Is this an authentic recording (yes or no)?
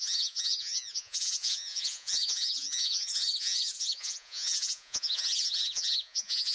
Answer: no